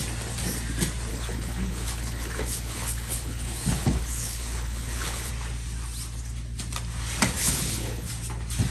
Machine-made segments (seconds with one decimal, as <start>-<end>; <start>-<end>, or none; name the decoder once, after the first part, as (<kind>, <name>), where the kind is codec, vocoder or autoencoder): 1.1-5.3 (codec, HILCodec); 7.4-8.1